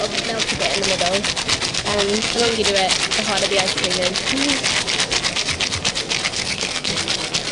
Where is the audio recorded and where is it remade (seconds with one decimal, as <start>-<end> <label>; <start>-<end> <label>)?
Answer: 0.0-1.7 recorded; 1.7-2.6 remade; 2.6-6.3 recorded; 6.3-6.9 remade; 6.9-7.5 recorded